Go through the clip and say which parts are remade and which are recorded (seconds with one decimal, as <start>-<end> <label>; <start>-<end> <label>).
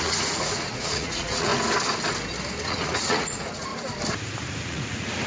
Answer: 0.0-1.5 remade; 1.5-2.6 recorded; 2.6-3.7 remade; 3.7-4.6 recorded; 4.6-5.3 remade